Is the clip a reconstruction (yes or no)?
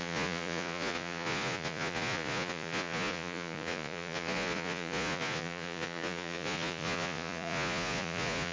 yes